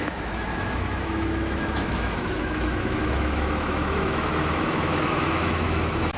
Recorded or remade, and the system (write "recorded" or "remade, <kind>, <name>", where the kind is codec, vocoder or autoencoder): remade, autoencoder, DAC-VAE